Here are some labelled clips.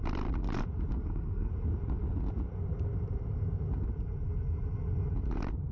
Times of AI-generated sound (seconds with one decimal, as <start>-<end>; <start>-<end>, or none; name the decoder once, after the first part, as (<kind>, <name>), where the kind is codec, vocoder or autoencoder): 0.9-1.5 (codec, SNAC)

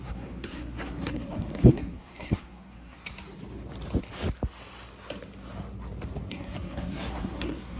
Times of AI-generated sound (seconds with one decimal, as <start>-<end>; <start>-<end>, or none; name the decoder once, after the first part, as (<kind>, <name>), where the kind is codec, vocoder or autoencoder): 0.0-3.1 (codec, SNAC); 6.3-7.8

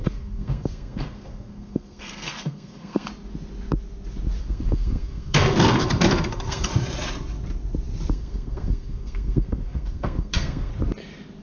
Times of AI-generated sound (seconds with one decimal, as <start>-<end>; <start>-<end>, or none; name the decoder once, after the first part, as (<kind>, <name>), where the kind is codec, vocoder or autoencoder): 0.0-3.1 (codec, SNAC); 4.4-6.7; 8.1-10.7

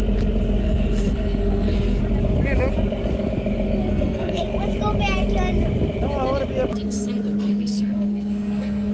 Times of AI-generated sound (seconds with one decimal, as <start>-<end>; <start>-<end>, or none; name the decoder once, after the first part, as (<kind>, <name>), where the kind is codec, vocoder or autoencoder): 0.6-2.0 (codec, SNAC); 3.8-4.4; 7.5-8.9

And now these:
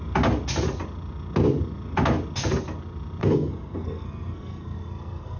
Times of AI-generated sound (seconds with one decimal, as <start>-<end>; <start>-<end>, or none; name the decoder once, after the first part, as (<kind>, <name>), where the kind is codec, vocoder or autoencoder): 3.2-5.4 (codec, SNAC)

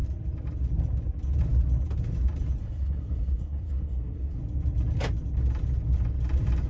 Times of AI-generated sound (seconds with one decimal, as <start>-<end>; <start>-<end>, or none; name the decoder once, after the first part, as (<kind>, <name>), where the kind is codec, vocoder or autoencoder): 2.6-4.4 (codec, SNAC)

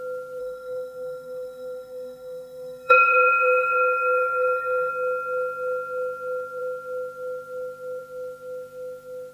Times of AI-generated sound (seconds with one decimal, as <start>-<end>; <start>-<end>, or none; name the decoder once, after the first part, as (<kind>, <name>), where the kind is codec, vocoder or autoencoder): 0.4-4.9 (codec, SNAC)